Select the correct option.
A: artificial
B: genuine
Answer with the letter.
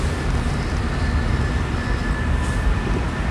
B